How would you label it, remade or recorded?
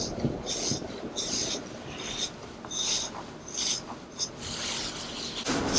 recorded